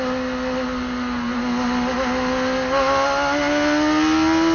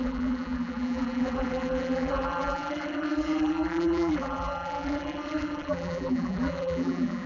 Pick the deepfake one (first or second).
second